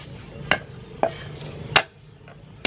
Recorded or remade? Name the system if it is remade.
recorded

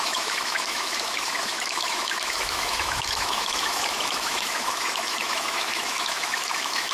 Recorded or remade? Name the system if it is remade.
remade, autoencoder, DAC-VAE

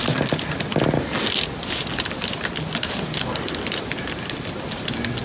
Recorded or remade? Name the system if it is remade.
recorded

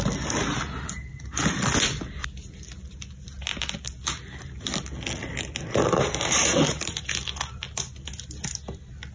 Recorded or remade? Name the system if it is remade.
recorded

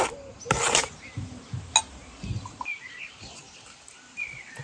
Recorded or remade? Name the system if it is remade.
recorded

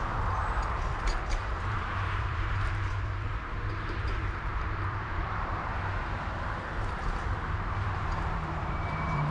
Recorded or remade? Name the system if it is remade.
remade, vocoder, BigVGAN v2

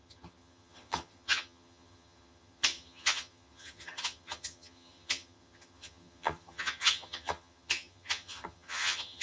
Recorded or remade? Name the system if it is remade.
remade, vocoder, HiFi-GAN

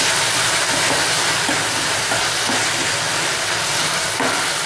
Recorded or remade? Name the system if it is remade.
recorded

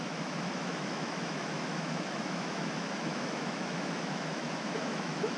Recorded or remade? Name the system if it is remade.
remade, autoencoder, DAC-VAE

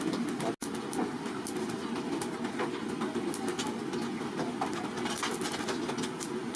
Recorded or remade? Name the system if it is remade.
recorded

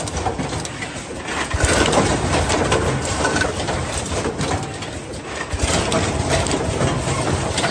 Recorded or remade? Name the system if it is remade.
recorded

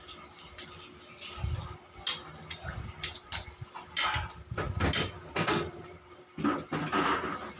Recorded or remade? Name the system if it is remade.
recorded